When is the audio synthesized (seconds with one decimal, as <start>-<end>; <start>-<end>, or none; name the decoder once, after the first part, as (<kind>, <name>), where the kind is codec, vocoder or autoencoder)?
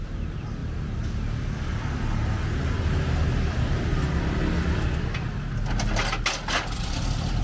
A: none